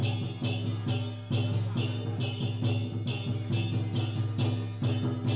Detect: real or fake real